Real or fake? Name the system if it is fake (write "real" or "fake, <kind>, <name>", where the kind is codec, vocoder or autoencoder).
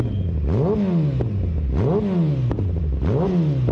real